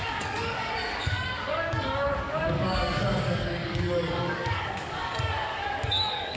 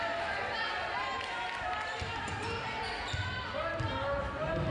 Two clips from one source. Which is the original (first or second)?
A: second